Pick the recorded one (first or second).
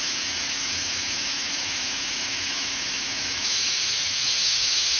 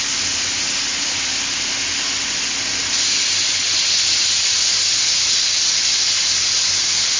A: second